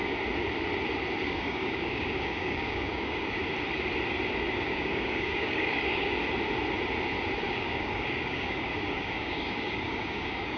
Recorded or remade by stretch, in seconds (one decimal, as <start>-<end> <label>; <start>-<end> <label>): 0.0-1.2 recorded; 1.2-3.4 remade; 3.4-4.6 recorded; 4.6-6.2 remade; 6.2-7.4 recorded; 7.4-10.6 remade

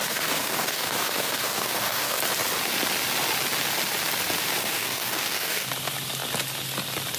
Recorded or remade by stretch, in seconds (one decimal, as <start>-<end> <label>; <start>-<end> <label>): 0.0-2.2 remade; 2.2-4.6 recorded; 4.6-5.7 remade; 5.7-7.2 recorded